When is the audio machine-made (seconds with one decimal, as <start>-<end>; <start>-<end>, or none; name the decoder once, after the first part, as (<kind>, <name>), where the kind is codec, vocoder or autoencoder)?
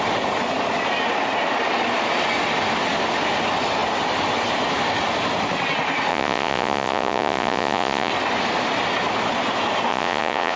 6.1-8.1 (vocoder, Vocos); 9.9-10.6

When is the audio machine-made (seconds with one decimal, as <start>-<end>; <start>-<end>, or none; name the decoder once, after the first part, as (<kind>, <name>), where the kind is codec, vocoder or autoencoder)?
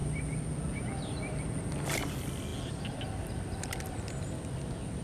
none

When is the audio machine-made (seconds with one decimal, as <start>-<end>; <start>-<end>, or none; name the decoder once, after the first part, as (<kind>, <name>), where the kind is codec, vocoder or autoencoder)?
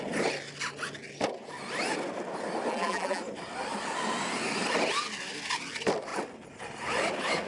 2.7-3.2 (vocoder, BigVGAN v2)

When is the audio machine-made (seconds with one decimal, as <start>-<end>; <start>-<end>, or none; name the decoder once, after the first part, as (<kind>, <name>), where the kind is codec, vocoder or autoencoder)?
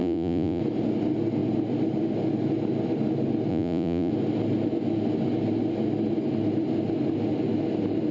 0.0-0.6 (vocoder, Vocos); 3.5-4.1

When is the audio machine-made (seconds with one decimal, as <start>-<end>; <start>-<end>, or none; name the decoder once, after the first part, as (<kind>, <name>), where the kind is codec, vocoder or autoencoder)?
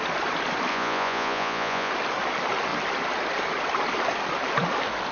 0.7-1.9 (vocoder, Vocos)